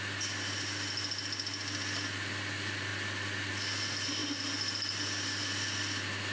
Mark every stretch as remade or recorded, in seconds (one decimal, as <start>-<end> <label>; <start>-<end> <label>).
0.0-6.3 recorded